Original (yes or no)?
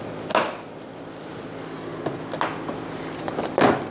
yes